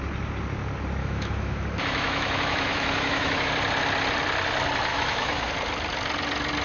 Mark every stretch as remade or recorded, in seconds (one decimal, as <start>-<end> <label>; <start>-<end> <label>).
0.0-1.0 recorded; 1.0-3.5 remade; 3.5-4.9 recorded; 4.9-5.5 remade; 5.5-6.6 recorded